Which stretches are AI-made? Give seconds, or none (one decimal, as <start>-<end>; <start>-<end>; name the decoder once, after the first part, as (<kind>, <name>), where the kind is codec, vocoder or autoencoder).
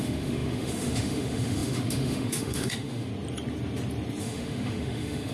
0.0-3.1 (autoencoder, DAC-VAE); 4.2-5.3